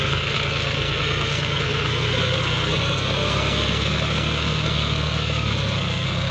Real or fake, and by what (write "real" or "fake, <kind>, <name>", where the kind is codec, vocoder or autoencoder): fake, codec, SNAC